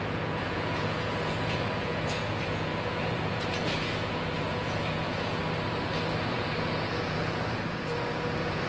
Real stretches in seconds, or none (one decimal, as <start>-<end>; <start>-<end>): 5.4-6.0